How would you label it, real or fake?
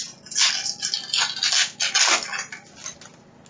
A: real